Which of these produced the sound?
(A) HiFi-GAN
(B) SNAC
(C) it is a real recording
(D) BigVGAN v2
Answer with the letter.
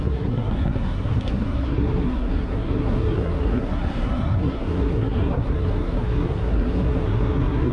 B